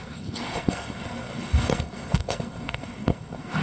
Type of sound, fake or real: fake